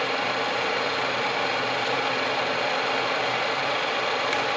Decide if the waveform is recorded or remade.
remade